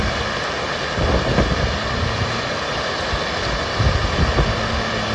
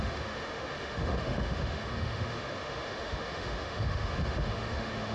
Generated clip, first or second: second